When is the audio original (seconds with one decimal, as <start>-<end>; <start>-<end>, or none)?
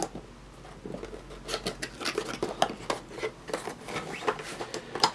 0.0-5.1